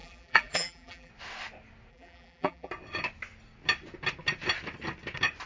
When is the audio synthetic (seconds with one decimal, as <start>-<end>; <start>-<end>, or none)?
0.0-1.1; 1.9-2.7